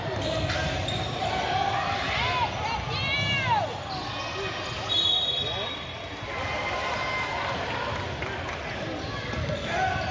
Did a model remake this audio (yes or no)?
no